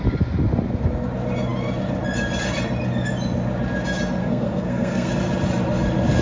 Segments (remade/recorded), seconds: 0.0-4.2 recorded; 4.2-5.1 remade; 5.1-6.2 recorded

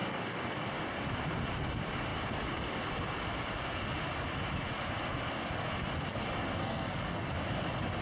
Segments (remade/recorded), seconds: 0.0-0.7 remade; 0.7-6.6 recorded; 6.6-7.3 remade; 7.3-8.0 recorded

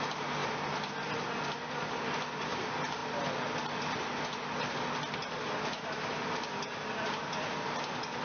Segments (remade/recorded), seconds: 0.0-8.2 recorded